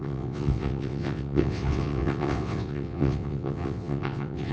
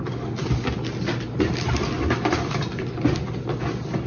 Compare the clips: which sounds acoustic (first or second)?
second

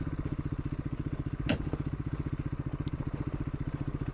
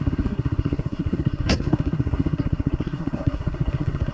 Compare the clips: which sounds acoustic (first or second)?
first